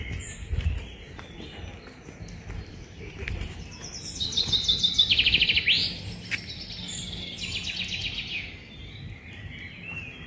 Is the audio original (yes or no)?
yes